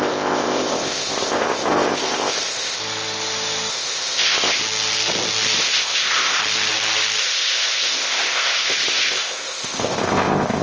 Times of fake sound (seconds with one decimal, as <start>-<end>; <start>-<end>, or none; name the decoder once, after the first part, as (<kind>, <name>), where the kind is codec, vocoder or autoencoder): 0.0-2.8 (codec, ZipCodec); 3.7-4.6; 5.6-6.4; 7.2-10.6